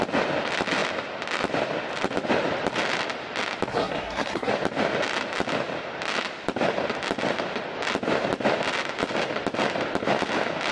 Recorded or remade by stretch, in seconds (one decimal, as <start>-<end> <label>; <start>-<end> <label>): 0.0-3.7 recorded; 3.7-4.5 remade; 4.5-10.7 recorded